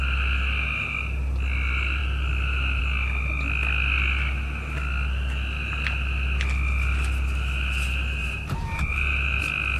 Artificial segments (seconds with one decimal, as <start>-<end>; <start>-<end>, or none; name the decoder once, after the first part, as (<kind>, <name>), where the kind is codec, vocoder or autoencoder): 8.2-9.4 (vocoder, BigVGAN v2)